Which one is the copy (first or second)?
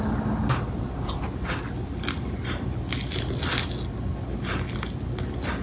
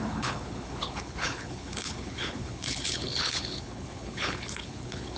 second